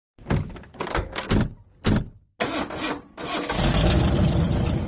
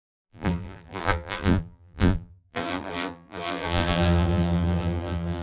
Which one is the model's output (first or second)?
second